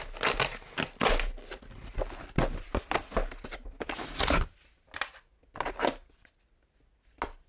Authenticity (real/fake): real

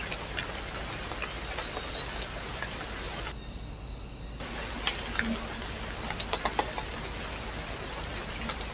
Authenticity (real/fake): real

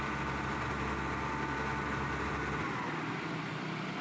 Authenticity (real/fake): real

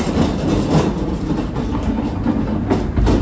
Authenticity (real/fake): real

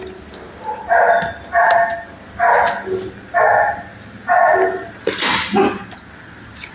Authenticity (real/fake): real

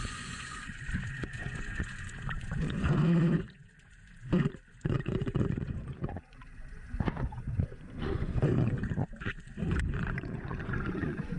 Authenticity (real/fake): fake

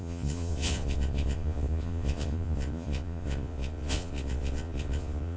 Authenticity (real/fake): fake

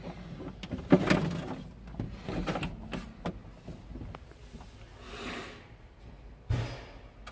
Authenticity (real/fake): real